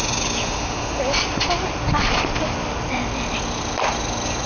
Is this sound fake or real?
real